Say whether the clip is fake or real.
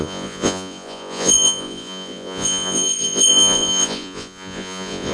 fake